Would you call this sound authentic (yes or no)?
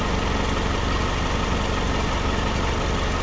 yes